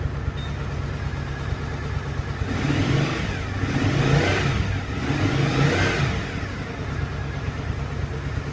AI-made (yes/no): no